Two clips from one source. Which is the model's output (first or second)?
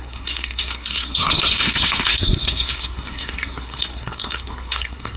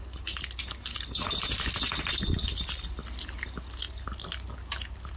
first